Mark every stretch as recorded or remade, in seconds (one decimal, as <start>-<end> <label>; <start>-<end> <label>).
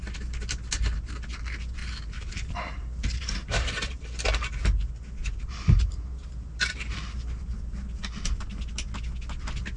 0.0-1.8 recorded; 1.8-4.0 remade; 4.0-5.2 recorded; 5.2-8.7 remade; 8.7-9.8 recorded